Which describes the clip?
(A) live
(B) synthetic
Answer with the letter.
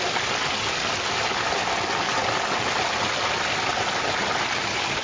A